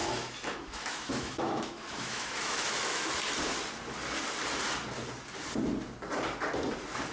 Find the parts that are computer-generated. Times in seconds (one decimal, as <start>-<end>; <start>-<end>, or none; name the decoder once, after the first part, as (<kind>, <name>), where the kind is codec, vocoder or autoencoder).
0.0-3.1 (autoencoder, DAC-VAE)